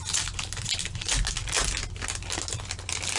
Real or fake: real